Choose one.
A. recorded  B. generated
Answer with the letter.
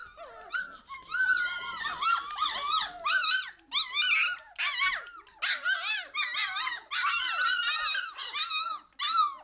A